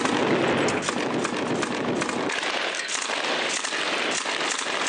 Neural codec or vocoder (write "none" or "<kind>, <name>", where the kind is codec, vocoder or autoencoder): none